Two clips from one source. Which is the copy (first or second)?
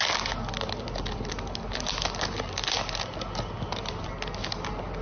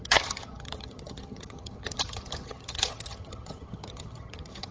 second